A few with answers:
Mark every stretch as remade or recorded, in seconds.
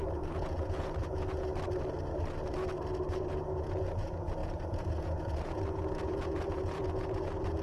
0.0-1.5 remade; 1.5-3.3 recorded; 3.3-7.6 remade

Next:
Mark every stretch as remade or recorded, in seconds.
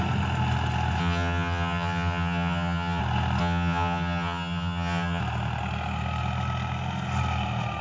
0.0-1.0 recorded; 1.0-3.0 remade; 3.0-3.4 recorded; 3.4-5.2 remade; 5.2-7.8 recorded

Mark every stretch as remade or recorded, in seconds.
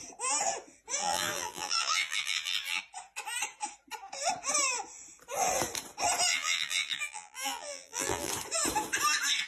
0.0-1.0 recorded; 1.0-2.8 remade; 2.8-6.3 recorded; 6.3-8.3 remade; 8.3-9.5 recorded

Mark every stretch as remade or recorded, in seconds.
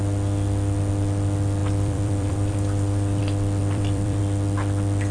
0.0-1.6 recorded; 1.6-3.2 remade; 3.2-3.6 recorded; 3.6-4.2 remade; 4.2-5.1 recorded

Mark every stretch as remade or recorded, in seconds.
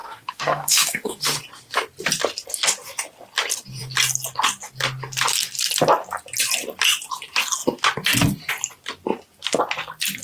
0.0-1.2 remade; 1.2-10.2 recorded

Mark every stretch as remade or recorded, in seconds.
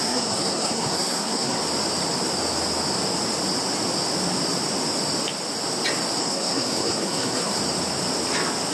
0.0-1.6 remade; 1.6-6.2 recorded; 6.2-7.6 remade; 7.6-8.7 recorded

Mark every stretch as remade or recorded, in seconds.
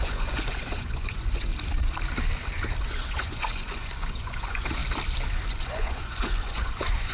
0.0-1.5 remade; 1.5-2.8 recorded; 2.8-4.8 remade; 4.8-5.5 recorded; 5.5-7.1 remade